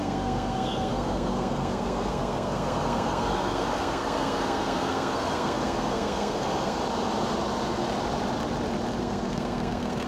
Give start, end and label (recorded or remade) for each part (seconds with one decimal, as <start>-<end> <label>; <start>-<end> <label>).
0.0-6.8 remade; 6.8-9.0 recorded; 9.0-10.1 remade